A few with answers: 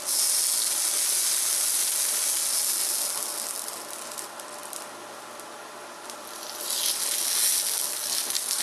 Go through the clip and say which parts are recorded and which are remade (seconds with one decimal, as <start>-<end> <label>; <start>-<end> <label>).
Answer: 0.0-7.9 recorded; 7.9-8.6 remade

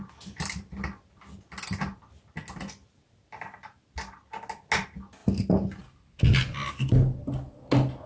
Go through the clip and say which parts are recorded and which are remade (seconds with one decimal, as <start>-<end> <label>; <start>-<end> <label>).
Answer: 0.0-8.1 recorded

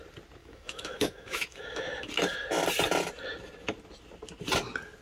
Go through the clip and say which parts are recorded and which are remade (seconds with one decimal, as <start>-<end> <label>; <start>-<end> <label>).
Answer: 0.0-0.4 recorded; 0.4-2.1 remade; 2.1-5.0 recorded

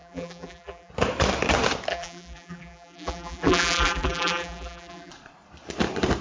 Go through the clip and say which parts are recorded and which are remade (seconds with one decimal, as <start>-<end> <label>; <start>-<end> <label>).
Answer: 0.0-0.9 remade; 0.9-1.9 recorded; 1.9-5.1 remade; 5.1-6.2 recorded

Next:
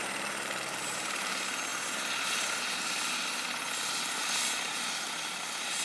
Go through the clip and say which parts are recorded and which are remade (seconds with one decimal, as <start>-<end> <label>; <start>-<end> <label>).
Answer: 0.0-1.7 remade; 1.7-2.6 recorded; 2.6-3.2 remade; 3.2-4.0 recorded; 4.0-5.8 remade

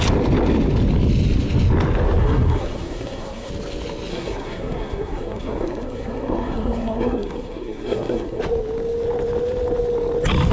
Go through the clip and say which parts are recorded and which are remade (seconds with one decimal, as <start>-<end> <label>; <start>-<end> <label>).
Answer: 0.0-2.2 recorded; 2.2-3.5 remade; 3.5-4.1 recorded; 4.1-8.4 remade; 8.4-10.5 recorded